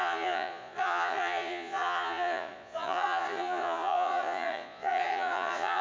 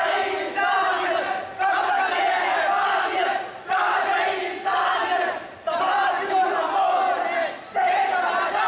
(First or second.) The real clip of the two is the second